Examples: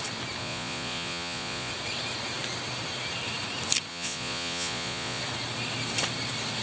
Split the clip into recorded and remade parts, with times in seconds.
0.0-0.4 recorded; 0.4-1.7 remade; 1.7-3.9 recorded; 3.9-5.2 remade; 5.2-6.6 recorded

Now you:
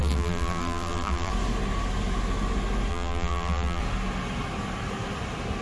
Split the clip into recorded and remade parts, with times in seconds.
0.0-1.3 remade; 1.3-2.9 recorded; 2.9-3.8 remade; 3.8-5.6 recorded

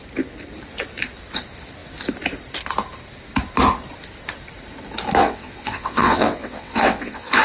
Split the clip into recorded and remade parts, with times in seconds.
0.0-5.2 recorded; 5.2-7.4 remade

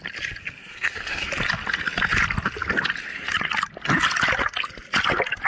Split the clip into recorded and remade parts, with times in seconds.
0.0-0.6 recorded; 0.6-1.3 remade; 1.3-5.5 recorded

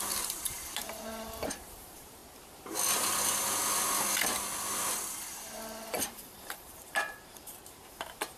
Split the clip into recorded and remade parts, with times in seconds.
0.0-2.2 remade; 2.2-5.9 recorded; 5.9-8.4 remade

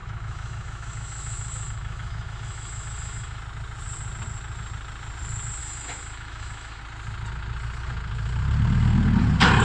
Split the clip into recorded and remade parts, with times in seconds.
0.0-3.4 remade; 3.4-5.6 recorded; 5.6-6.8 remade; 6.8-9.6 recorded